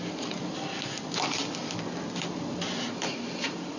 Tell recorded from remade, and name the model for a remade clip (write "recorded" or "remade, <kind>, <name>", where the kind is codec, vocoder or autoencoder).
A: recorded